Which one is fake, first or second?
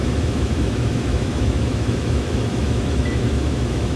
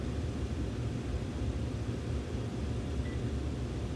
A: first